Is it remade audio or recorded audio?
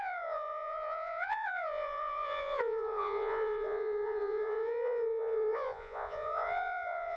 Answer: remade